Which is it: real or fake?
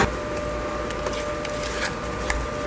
real